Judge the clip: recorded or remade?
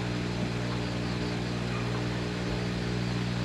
recorded